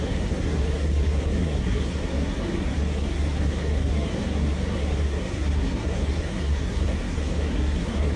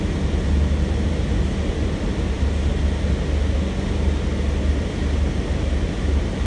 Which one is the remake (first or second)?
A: first